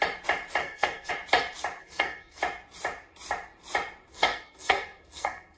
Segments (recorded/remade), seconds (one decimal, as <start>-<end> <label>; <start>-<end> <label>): 0.0-0.6 recorded; 0.6-1.1 remade; 1.1-1.8 recorded; 1.8-2.4 remade; 2.4-4.1 recorded; 4.1-5.6 remade